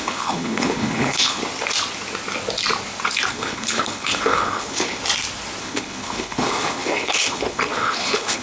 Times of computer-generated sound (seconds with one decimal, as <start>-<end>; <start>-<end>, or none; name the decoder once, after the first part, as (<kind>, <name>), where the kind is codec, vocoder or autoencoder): 0.0-1.4 (codec, HILCodec); 3.3-5.0; 5.6-8.4